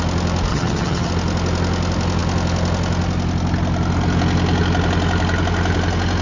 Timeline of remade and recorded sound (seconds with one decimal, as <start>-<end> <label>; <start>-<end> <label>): 0.0-0.5 recorded; 0.5-1.1 remade; 1.1-6.2 recorded

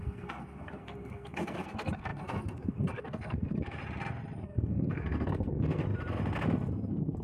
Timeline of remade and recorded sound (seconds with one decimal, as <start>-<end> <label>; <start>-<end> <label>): 0.0-3.8 remade; 3.8-4.4 recorded; 4.4-5.8 remade; 5.8-6.7 recorded; 6.7-7.2 remade

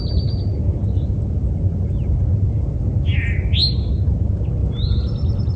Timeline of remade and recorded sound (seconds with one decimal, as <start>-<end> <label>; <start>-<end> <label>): 0.0-5.6 recorded

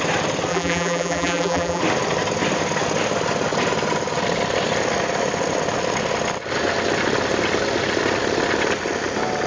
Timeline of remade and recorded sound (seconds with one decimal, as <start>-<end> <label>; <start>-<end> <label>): 0.0-0.5 recorded; 0.5-1.8 remade; 1.8-9.5 recorded